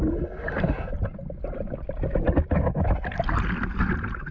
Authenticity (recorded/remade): recorded